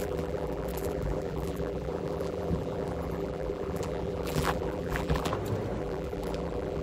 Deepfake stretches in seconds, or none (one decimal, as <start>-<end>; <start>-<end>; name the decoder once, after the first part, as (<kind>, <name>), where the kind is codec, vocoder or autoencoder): 0.0-5.3 (vocoder, BigVGAN v2); 5.8-6.8